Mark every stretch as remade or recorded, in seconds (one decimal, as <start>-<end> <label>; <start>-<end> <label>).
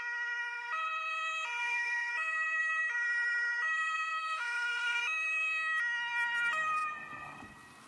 0.0-1.6 recorded; 1.6-2.1 remade; 2.1-4.1 recorded; 4.1-5.0 remade; 5.0-7.9 recorded